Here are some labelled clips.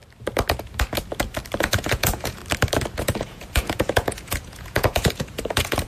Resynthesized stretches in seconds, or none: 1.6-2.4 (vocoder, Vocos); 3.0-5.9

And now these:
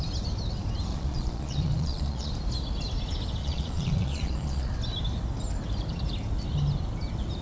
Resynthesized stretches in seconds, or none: 0.9-2.3 (vocoder, Vocos); 3.4-4.7